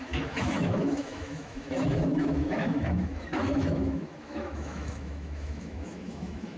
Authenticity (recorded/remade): remade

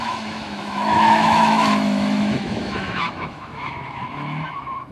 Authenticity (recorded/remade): remade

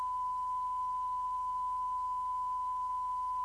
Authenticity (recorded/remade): recorded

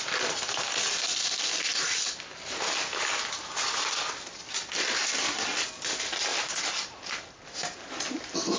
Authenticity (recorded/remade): recorded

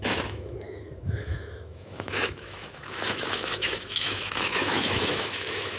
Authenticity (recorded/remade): remade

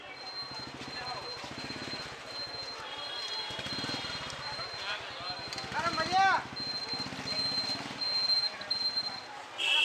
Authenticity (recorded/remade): recorded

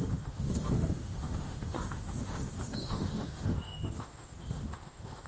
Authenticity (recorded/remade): remade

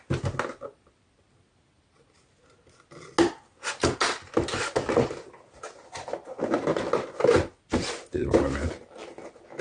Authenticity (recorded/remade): recorded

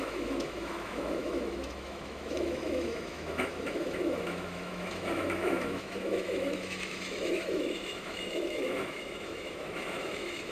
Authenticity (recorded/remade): remade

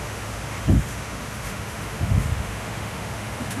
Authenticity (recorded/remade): remade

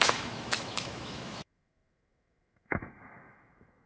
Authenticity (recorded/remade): remade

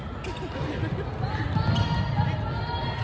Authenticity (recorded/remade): recorded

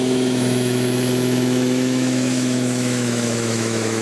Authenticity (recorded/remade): remade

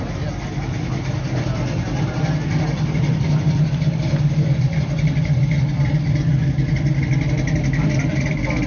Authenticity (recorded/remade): recorded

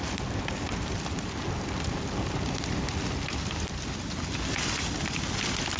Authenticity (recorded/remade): recorded